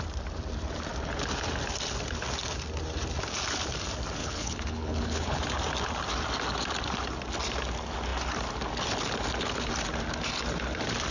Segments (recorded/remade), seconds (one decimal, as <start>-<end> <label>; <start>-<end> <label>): 0.0-4.2 recorded; 4.2-5.4 remade; 5.4-11.1 recorded